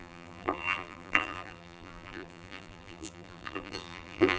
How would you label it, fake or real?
fake